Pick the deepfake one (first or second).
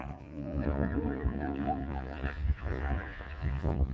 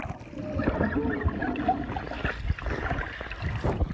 first